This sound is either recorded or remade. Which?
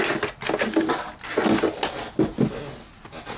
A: recorded